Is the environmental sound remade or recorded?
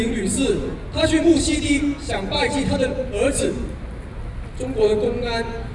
recorded